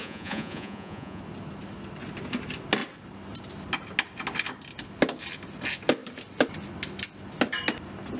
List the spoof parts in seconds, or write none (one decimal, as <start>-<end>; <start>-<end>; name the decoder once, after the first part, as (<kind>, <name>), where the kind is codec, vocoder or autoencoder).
0.0-1.2 (vocoder, Vocos)